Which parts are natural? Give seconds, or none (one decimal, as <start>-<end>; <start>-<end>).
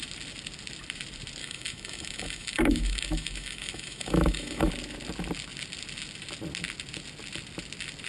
0.0-1.4; 4.7-8.1